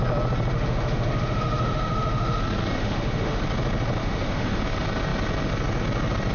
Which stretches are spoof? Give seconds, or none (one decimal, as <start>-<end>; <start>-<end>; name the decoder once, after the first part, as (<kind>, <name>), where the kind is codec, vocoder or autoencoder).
0.5-2.4 (autoencoder, DAC-VAE); 2.8-3.4; 4.0-4.6